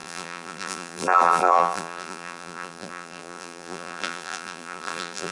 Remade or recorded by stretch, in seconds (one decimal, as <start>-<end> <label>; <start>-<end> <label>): 0.0-5.3 remade